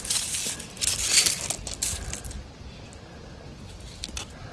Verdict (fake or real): real